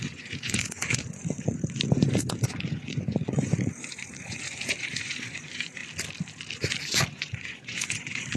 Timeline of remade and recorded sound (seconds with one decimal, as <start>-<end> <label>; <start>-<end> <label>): 0.0-5.8 remade; 5.8-7.1 recorded; 7.1-8.4 remade